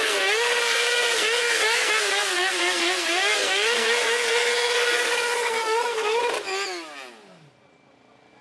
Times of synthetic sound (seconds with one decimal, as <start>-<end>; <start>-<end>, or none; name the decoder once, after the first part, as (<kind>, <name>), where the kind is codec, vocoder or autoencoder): 0.0-6.2 (codec, SNAC)